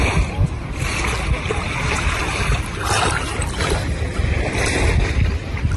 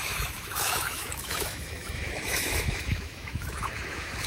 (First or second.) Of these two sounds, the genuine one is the first